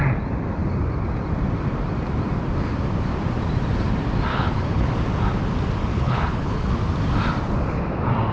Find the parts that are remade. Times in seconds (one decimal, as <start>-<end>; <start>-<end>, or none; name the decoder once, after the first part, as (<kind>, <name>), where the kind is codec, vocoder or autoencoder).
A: 4.3-4.9 (codec, HILCodec); 5.9-6.7